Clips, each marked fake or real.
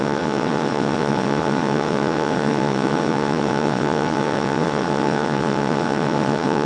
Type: fake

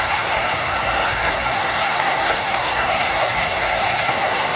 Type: fake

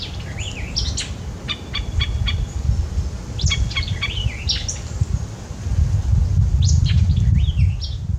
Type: real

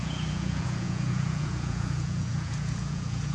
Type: fake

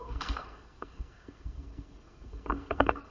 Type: fake